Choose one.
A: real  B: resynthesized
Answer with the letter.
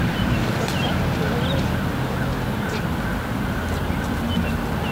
A